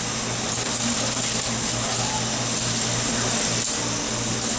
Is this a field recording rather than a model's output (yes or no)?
yes